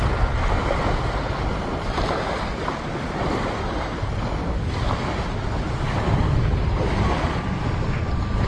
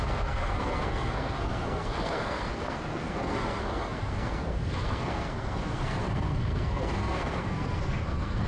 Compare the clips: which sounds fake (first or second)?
second